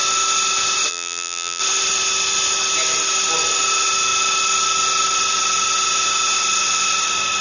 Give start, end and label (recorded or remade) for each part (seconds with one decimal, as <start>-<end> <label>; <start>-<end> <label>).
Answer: 0.0-0.9 recorded; 0.9-1.6 remade; 1.6-7.4 recorded